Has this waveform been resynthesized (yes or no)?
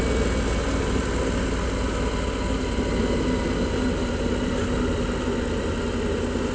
no